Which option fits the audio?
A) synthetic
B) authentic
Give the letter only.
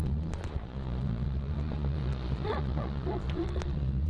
A